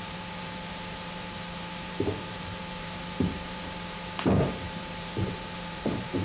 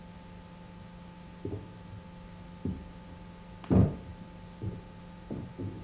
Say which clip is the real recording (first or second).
second